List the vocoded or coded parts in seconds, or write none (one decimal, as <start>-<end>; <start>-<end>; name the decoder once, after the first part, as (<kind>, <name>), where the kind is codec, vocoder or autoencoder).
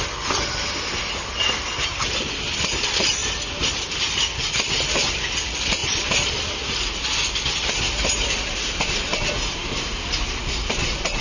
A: 9.6-10.4 (vocoder, BigVGAN v2)